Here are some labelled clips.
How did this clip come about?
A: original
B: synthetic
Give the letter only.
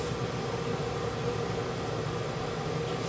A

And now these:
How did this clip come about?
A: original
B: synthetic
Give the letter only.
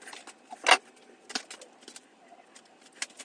A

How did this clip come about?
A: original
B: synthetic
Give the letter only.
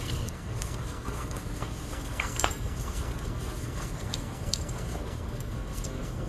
B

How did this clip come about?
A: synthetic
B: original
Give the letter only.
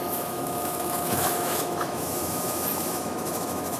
A